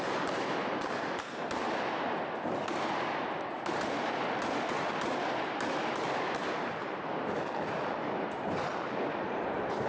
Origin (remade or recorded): recorded